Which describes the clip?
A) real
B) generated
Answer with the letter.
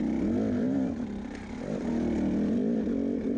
A